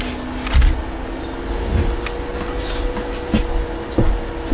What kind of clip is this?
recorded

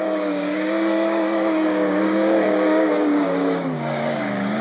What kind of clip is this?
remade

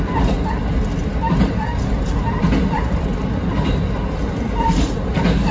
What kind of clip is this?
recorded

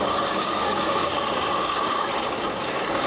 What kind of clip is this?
remade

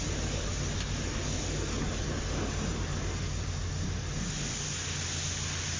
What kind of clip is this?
recorded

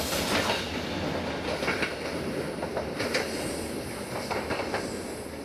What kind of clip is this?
recorded